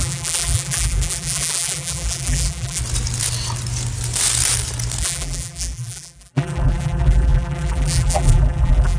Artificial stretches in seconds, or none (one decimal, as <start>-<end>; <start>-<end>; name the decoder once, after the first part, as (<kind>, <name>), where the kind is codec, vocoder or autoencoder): 0.0-2.8 (vocoder, BigVGAN v2); 5.0-9.0